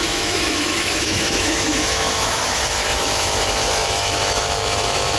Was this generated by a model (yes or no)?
yes